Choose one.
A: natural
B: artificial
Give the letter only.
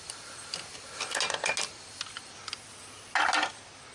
A